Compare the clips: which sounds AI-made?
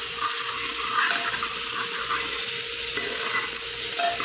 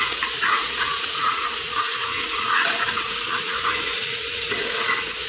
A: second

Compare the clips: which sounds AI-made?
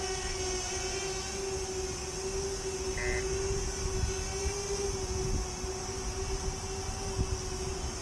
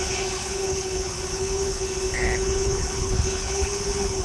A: second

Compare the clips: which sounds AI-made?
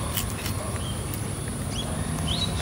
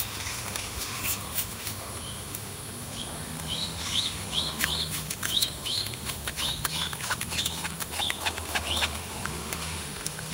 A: second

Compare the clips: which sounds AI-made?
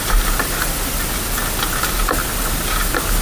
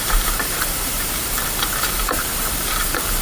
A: second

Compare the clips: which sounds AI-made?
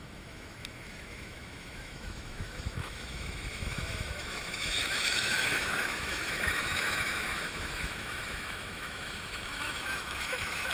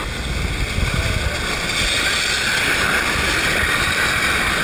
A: first